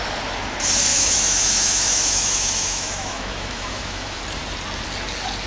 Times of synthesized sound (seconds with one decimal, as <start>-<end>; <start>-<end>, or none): 0.9-4.2